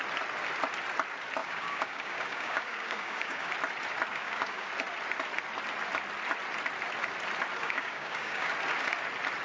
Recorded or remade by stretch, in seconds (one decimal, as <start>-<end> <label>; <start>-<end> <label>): 0.0-1.4 recorded; 1.4-3.5 remade; 3.5-4.1 recorded; 4.1-4.7 remade; 4.7-7.6 recorded; 7.6-8.5 remade; 8.5-9.4 recorded